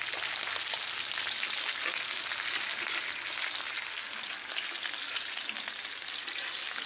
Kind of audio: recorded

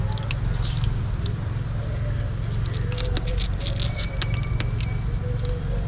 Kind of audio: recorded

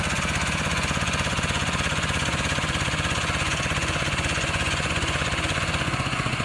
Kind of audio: remade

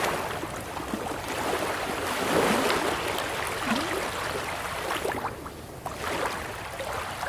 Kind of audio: recorded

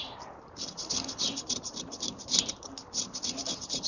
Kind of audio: remade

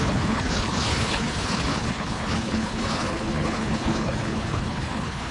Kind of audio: remade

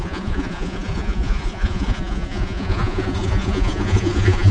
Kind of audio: remade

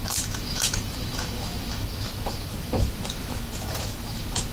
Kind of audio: remade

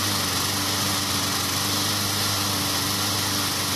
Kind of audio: recorded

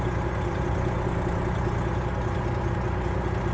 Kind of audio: recorded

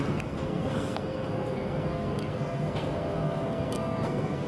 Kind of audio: remade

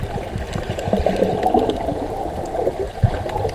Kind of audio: recorded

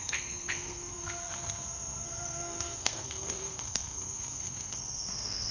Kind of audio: remade